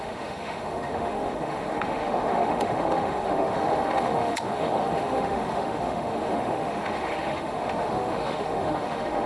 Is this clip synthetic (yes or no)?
yes